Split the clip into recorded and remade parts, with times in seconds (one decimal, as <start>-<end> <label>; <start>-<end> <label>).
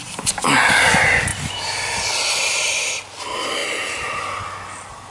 0.0-5.1 recorded